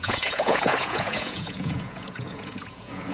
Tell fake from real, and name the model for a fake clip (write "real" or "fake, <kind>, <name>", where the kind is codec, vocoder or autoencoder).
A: fake, vocoder, Vocos